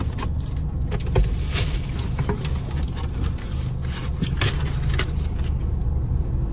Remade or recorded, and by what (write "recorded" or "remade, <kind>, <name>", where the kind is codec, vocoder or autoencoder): recorded